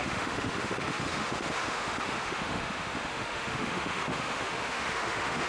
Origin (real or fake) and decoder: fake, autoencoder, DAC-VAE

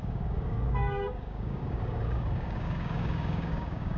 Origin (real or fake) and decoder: fake, codec, DAC